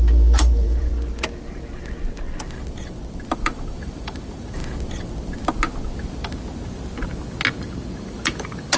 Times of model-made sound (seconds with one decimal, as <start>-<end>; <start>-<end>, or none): 0.0-0.9; 3.3-4.6; 8.0-8.8

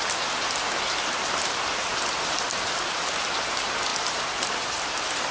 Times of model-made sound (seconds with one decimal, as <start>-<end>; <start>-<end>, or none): none

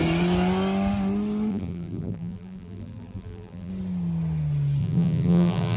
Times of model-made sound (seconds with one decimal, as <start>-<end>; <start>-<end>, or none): 1.5-3.7; 4.8-5.8